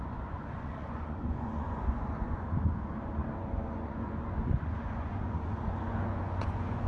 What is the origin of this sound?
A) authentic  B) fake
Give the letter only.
B